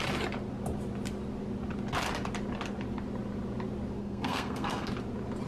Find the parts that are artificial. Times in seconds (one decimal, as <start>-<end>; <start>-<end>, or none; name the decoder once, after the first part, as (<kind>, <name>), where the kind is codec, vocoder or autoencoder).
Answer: 4.0-4.9 (codec, SNAC)